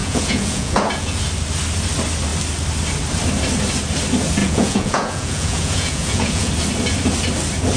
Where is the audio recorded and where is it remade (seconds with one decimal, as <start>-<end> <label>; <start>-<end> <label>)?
0.0-1.2 remade; 1.2-4.4 recorded; 4.4-6.5 remade; 6.5-7.8 recorded